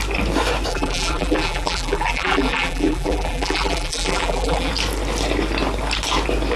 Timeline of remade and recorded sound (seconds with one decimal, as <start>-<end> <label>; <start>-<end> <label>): 0.0-0.7 recorded; 0.7-4.7 remade; 4.7-6.6 recorded